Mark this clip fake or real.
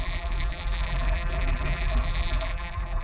fake